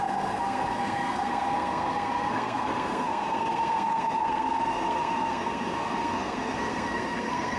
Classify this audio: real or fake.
fake